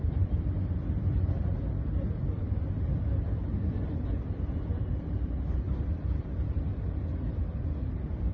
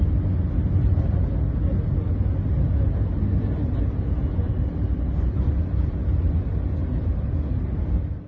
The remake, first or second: first